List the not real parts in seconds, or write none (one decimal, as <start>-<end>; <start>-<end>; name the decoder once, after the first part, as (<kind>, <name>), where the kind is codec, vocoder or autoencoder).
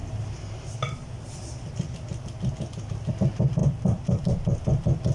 none